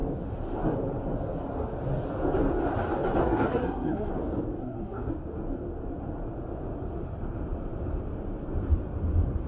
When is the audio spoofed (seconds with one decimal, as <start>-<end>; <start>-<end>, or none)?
3.2-4.1; 4.6-5.1